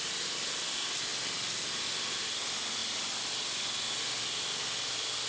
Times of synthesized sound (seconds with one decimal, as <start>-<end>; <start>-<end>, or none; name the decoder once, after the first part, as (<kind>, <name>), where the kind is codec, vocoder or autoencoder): none